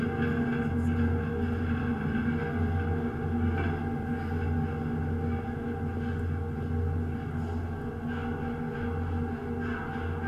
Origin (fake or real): real